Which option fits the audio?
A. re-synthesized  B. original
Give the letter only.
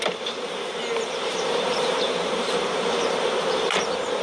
A